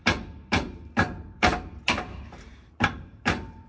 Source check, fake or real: fake